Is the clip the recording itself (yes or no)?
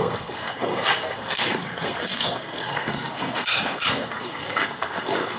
no